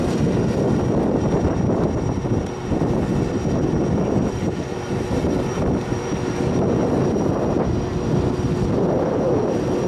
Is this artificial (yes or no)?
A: no